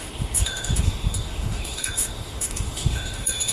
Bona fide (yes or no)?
no